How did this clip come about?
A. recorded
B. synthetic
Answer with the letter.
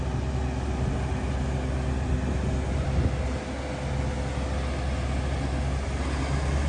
A